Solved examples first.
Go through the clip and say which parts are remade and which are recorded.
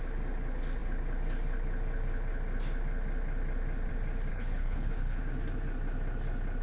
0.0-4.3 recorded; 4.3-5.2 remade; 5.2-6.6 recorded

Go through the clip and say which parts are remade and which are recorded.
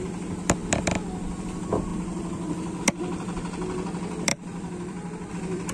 0.0-1.9 recorded; 1.9-2.8 remade; 2.8-4.3 recorded; 4.3-5.3 remade; 5.3-5.7 recorded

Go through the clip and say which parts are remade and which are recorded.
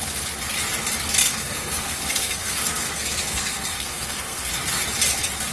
0.0-1.2 recorded; 1.2-4.5 remade; 4.5-5.5 recorded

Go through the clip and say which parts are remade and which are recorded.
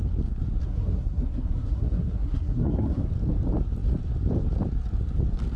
0.0-0.6 recorded; 0.6-3.1 remade; 3.1-5.6 recorded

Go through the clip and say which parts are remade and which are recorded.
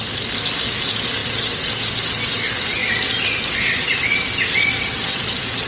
0.0-2.8 recorded; 2.8-4.0 remade; 4.0-5.7 recorded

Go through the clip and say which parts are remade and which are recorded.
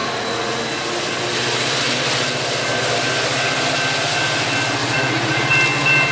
0.0-0.6 remade; 0.6-4.8 recorded; 4.8-5.5 remade; 5.5-6.1 recorded